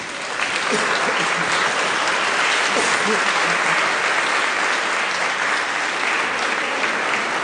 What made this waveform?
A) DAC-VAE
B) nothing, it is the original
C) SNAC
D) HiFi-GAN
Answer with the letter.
B